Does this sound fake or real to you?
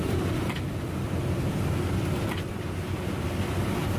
fake